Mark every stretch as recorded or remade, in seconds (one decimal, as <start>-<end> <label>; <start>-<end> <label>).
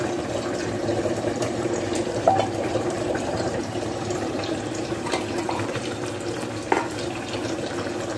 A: 0.0-0.9 recorded; 0.9-5.8 remade; 5.8-8.2 recorded